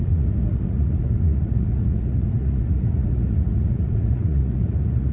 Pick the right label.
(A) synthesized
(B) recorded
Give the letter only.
A